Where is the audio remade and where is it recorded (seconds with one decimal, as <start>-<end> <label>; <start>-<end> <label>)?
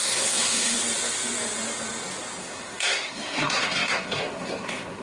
0.0-0.8 remade; 0.8-2.4 recorded; 2.4-5.0 remade